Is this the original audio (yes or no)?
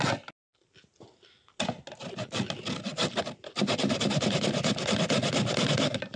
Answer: yes